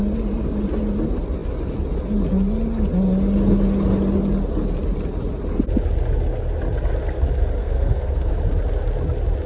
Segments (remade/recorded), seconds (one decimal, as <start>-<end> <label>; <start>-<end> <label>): 0.0-7.6 recorded; 7.6-8.3 remade; 8.3-9.5 recorded

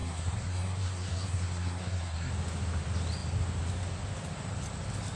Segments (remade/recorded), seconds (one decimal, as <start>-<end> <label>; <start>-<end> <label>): 0.0-2.3 remade; 2.3-5.2 recorded

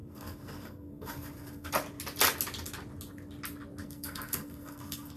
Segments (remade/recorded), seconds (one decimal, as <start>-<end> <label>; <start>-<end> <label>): 0.0-1.7 remade; 1.7-3.8 recorded; 3.8-5.2 remade

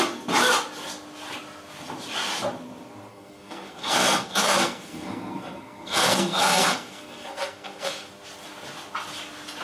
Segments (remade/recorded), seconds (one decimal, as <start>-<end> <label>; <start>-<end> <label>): 0.0-3.1 recorded; 3.1-8.1 remade; 8.1-9.6 recorded

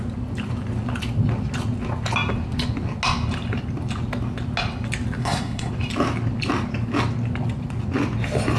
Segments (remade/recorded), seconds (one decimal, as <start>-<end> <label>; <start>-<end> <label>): 0.0-5.2 recorded; 5.2-5.7 remade; 5.7-8.6 recorded